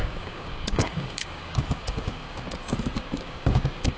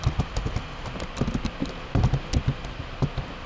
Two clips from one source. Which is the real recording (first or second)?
second